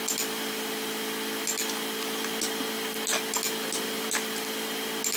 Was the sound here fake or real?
real